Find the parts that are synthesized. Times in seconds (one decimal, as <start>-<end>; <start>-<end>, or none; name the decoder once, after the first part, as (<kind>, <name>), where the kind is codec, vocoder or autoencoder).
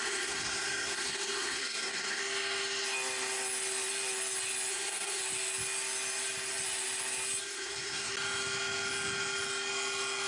0.0-2.2 (codec, SNAC); 4.7-5.2; 7.4-8.1